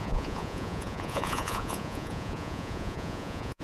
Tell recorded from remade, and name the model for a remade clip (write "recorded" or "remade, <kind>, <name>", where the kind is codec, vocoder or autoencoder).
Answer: remade, vocoder, Vocos